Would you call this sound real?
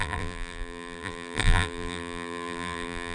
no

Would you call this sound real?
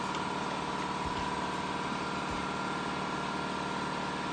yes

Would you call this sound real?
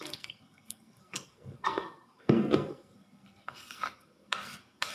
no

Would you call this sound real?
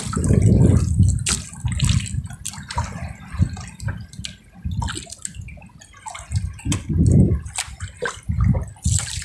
yes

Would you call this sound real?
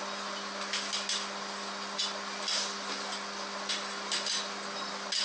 yes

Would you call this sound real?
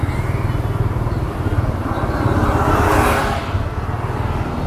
yes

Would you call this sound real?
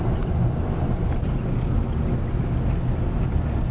yes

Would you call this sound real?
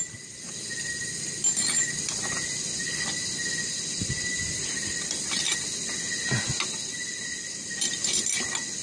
yes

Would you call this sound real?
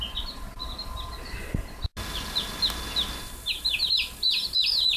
yes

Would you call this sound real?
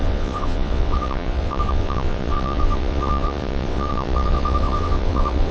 no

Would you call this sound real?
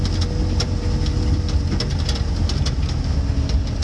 yes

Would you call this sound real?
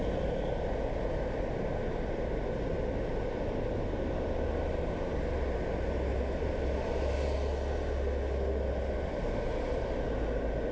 yes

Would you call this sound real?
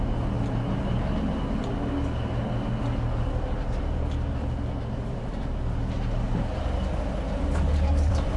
yes